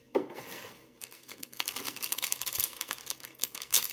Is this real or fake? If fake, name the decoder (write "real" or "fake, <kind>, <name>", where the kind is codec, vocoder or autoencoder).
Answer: fake, codec, SNAC